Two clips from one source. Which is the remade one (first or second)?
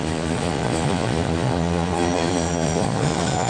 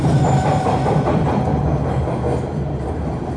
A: first